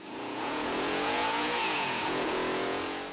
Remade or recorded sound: remade